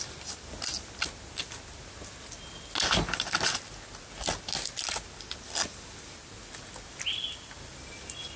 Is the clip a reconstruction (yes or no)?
no